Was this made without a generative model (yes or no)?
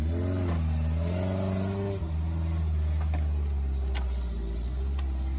yes